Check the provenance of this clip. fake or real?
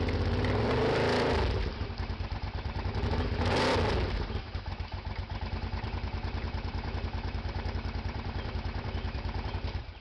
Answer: fake